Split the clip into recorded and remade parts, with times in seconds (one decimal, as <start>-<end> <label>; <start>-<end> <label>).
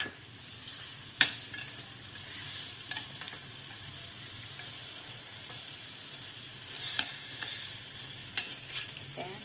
0.0-6.5 remade; 6.5-7.7 recorded; 7.7-8.2 remade; 8.2-8.7 recorded; 8.7-9.4 remade